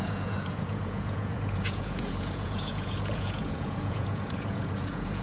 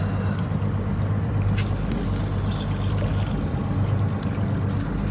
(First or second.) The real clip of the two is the second